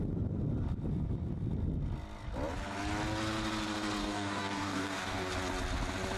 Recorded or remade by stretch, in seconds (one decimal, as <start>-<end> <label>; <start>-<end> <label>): 0.0-4.0 recorded; 4.0-5.3 remade; 5.3-6.2 recorded